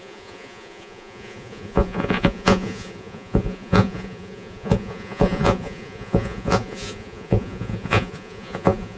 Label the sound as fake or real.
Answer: fake